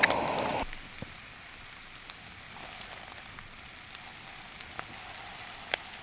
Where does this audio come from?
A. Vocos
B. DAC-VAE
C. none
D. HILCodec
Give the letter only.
C